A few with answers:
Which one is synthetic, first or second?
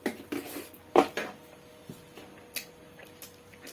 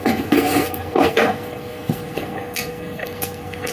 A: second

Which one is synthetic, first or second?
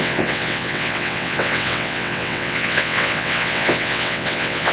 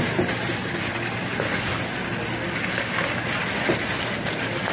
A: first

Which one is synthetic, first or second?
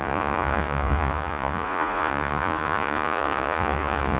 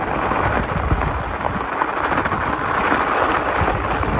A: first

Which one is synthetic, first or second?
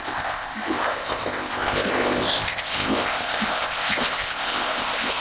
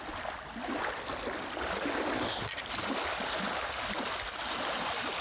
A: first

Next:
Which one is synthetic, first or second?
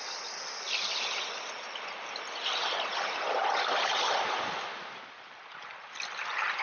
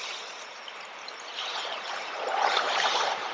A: second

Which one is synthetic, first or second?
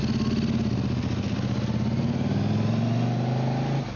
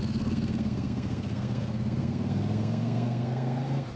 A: second